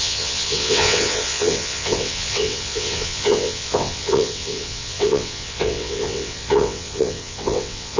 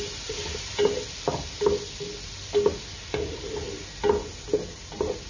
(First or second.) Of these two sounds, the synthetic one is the first